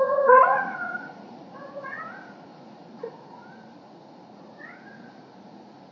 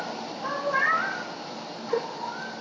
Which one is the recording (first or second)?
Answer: second